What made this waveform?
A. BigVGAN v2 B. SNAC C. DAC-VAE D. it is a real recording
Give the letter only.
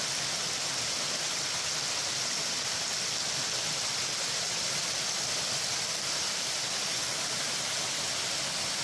D